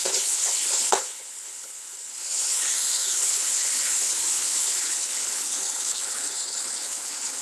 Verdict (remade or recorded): remade